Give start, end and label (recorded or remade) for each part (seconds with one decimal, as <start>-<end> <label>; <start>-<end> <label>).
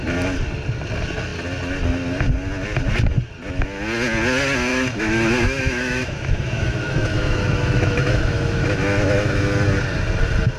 0.0-4.7 recorded; 4.7-9.4 remade; 9.4-10.6 recorded